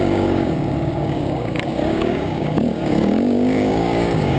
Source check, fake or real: fake